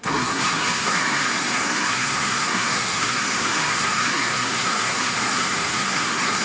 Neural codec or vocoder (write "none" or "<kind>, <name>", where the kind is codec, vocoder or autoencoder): codec, SNAC